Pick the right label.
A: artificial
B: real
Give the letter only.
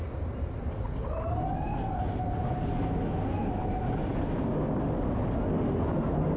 B